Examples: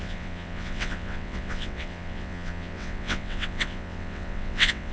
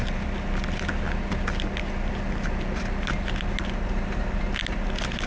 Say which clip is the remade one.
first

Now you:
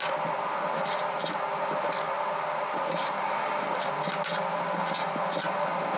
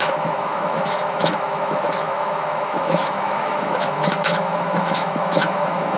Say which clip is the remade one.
second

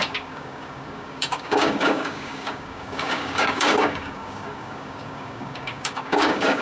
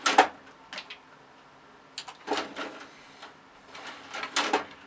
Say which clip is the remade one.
first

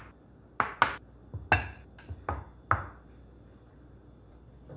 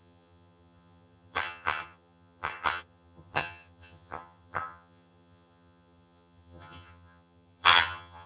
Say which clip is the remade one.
second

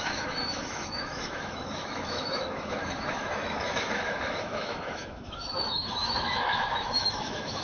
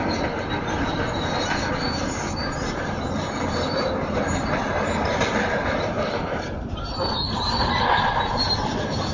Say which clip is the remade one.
first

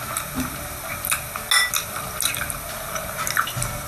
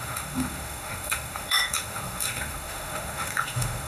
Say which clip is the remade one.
second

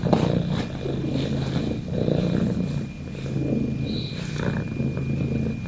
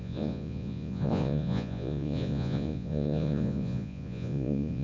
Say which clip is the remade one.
second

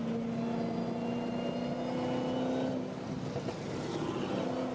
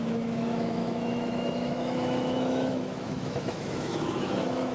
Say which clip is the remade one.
second